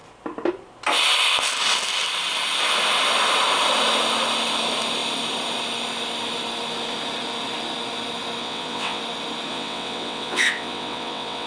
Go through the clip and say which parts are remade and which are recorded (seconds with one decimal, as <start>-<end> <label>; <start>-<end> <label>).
0.0-8.4 recorded; 8.4-9.0 remade; 9.0-9.5 recorded; 9.5-11.5 remade